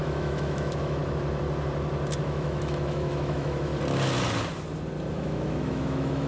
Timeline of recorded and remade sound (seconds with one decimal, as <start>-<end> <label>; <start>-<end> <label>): 0.0-1.0 remade; 1.0-2.2 recorded; 2.2-3.7 remade; 3.7-5.1 recorded; 5.1-6.3 remade